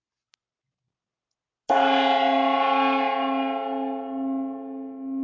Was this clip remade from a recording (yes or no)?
no